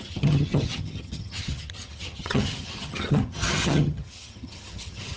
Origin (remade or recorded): remade